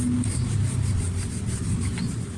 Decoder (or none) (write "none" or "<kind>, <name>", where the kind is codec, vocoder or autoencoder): none